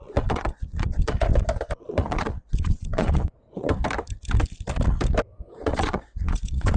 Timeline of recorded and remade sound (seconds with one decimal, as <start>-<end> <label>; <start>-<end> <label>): 0.0-1.3 remade; 1.3-1.8 recorded; 1.8-3.7 remade; 3.7-5.5 recorded; 5.5-6.8 remade